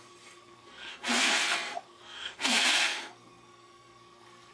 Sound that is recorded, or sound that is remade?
remade